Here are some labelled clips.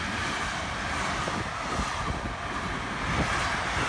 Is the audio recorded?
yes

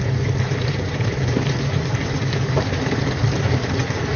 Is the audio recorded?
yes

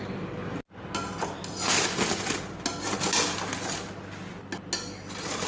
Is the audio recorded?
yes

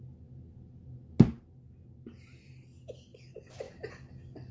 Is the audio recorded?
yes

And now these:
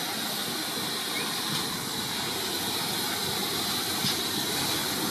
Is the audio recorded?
yes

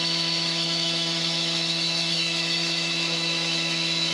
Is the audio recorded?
no